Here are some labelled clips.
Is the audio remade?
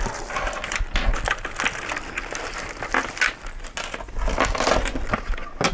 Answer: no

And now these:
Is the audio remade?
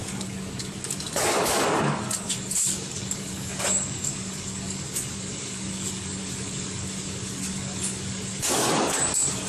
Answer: yes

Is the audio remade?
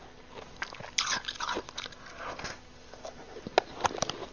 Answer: no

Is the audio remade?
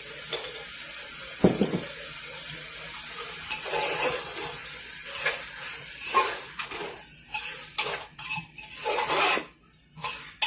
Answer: no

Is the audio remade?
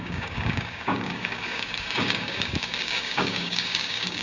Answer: yes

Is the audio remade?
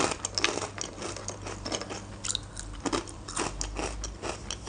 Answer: no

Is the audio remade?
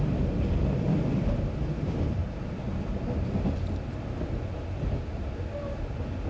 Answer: no